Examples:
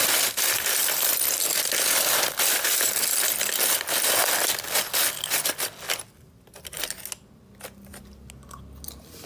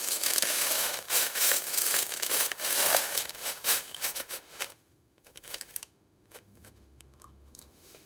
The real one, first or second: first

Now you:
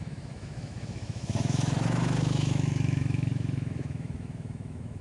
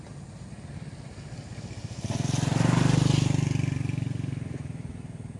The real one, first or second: second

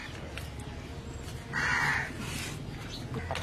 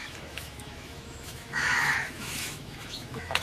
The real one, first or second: first